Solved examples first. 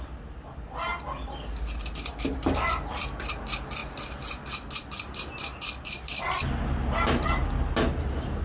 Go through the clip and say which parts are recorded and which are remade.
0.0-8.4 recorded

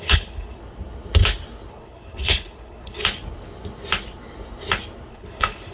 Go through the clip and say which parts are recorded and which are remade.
0.0-0.6 remade; 0.6-1.7 recorded; 1.7-3.0 remade; 3.0-5.1 recorded; 5.1-5.7 remade

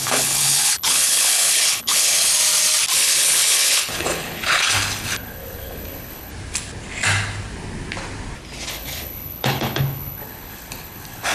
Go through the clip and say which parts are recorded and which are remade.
0.0-2.3 remade; 2.3-3.0 recorded; 3.0-6.3 remade; 6.3-8.7 recorded; 8.7-11.3 remade

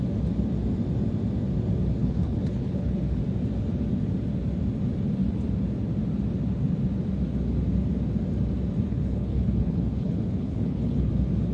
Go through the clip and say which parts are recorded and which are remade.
0.0-2.0 recorded; 2.0-3.2 remade; 3.2-8.9 recorded; 8.9-11.1 remade; 11.1-11.5 recorded

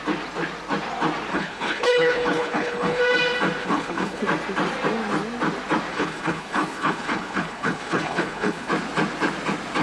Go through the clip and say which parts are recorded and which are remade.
0.0-1.3 recorded; 1.3-3.0 remade; 3.0-3.6 recorded; 3.6-4.2 remade; 4.2-5.9 recorded; 5.9-8.7 remade; 8.7-9.8 recorded

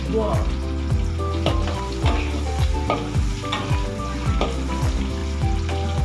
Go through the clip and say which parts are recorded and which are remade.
0.0-6.0 recorded

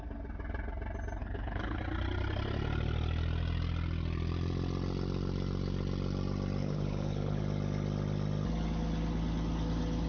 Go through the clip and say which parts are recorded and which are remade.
0.0-1.2 recorded; 1.2-1.8 remade; 1.8-6.6 recorded; 6.6-7.4 remade; 7.4-10.1 recorded